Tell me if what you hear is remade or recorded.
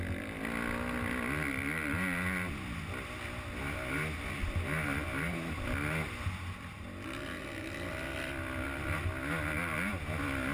recorded